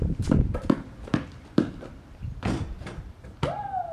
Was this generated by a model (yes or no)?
yes